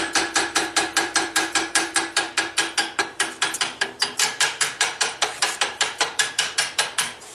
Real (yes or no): no